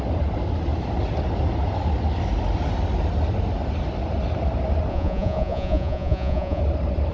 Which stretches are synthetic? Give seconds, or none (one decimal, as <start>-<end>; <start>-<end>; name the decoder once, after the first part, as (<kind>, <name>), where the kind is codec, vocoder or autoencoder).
4.9-6.6 (vocoder, Vocos)

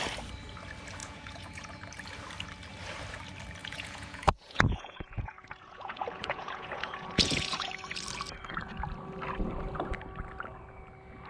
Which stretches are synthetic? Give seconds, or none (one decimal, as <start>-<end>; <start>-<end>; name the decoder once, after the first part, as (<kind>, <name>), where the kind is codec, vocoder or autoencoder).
1.0-1.9 (vocoder, Vocos); 3.6-7.7

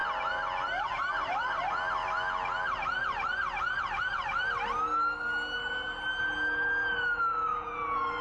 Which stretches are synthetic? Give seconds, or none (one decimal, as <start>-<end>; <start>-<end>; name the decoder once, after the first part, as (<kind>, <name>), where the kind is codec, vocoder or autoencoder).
7.3-8.2 (vocoder, Vocos)